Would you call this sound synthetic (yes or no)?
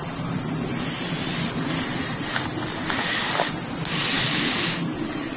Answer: no